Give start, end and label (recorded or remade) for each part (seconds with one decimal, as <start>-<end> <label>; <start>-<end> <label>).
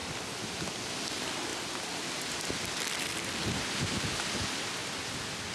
0.0-1.0 recorded; 1.0-1.5 remade; 1.5-2.3 recorded; 2.3-4.8 remade; 4.8-5.5 recorded